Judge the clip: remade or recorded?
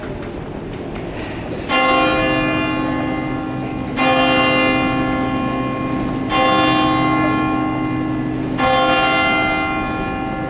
recorded